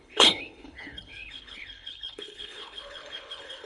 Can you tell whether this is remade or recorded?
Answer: remade